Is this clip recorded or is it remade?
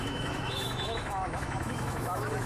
remade